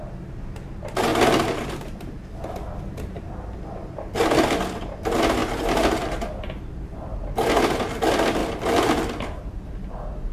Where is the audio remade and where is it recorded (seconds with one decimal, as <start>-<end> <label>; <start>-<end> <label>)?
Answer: 0.0-5.4 recorded; 5.4-7.2 remade; 7.2-8.4 recorded; 8.4-9.9 remade; 9.9-10.3 recorded